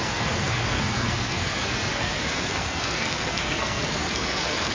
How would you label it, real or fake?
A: fake